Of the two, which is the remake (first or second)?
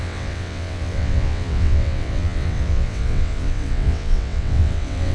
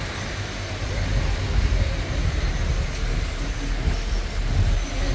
first